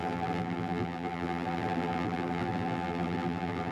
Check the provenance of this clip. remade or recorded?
remade